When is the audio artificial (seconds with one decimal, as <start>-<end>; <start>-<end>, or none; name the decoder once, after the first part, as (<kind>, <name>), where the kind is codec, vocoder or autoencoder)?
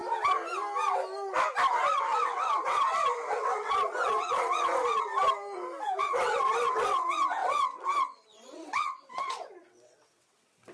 1.9-5.1 (vocoder, WaveNeXt); 6.0-10.7